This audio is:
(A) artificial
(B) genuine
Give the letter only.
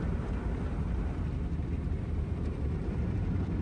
B